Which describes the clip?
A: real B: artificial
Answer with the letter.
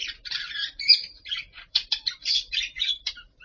B